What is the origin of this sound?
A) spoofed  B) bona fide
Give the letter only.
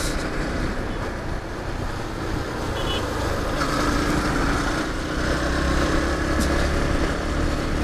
B